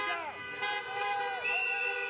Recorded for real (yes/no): yes